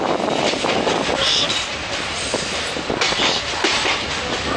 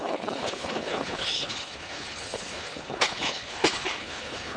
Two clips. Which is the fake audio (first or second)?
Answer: second